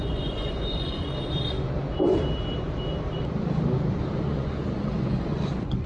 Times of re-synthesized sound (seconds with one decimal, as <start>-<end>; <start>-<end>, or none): 0.0-1.1; 4.2-5.9